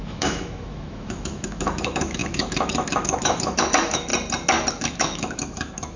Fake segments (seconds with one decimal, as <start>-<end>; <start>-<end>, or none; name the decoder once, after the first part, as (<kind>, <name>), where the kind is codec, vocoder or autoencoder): 0.0-4.1 (autoencoder, DAC-VAE); 4.7-6.0